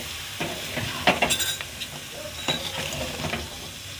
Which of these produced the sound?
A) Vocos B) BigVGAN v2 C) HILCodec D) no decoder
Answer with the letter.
D